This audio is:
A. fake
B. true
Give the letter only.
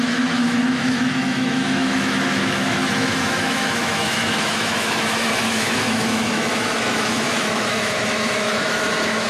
A